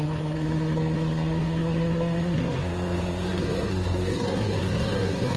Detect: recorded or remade remade